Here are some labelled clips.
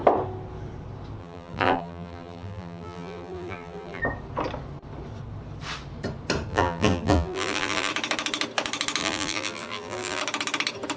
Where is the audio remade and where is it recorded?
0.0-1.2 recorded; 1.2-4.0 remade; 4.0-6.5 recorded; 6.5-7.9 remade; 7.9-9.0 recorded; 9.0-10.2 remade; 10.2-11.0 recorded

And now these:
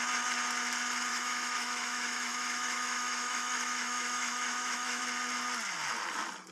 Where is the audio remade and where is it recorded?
0.0-1.1 recorded; 1.1-5.0 remade; 5.0-6.5 recorded

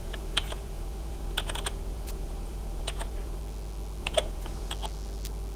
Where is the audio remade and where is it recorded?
0.0-3.4 remade; 3.4-4.0 recorded; 4.0-4.7 remade; 4.7-5.6 recorded

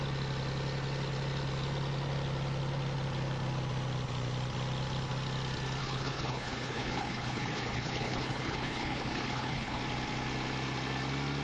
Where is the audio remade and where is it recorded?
0.0-5.8 recorded; 5.8-9.8 remade; 9.8-11.4 recorded

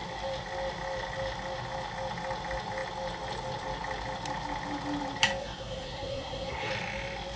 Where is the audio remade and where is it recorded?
0.0-5.4 recorded; 5.4-6.7 remade; 6.7-7.4 recorded